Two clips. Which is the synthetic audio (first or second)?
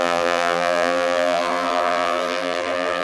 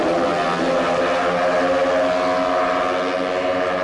first